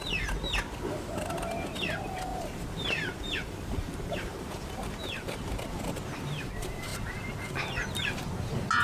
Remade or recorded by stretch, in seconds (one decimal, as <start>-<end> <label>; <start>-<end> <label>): 0.0-2.3 recorded; 2.3-5.5 remade; 5.5-8.8 recorded